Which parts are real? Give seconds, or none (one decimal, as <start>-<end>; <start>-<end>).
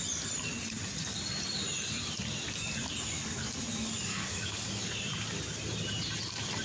0.0-4.1; 4.9-6.6